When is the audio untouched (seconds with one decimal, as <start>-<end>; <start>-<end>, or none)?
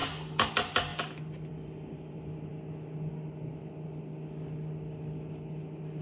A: 0.0-6.0